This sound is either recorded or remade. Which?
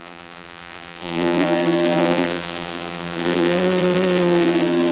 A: remade